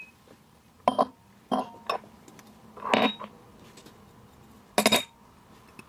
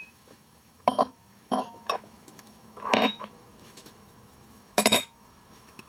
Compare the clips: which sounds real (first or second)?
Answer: first